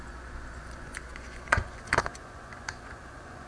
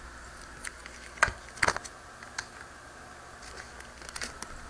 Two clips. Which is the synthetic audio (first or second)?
first